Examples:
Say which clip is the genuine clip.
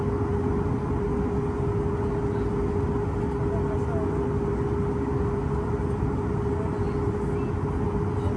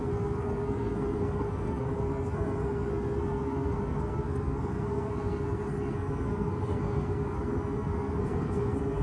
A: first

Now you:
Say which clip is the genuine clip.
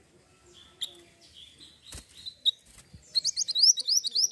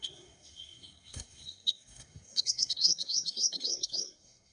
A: first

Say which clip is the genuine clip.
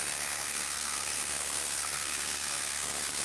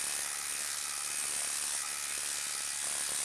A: second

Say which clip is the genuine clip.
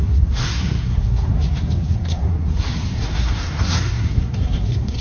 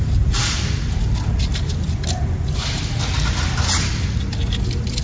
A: second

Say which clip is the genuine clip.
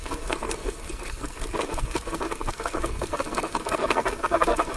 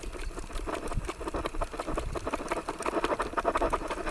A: second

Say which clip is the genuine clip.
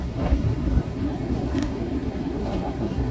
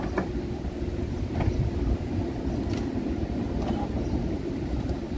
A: second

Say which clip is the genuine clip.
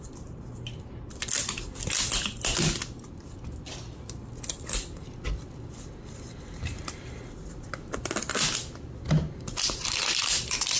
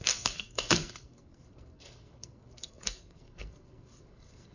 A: first